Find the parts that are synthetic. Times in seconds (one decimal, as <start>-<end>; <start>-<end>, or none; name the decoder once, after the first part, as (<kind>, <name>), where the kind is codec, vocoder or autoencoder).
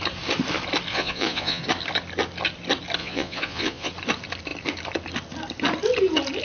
0.9-1.6 (vocoder, Vocos); 3.0-3.9